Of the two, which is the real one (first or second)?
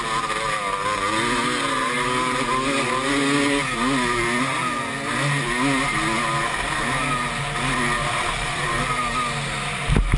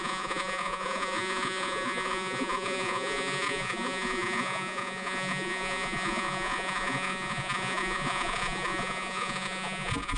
first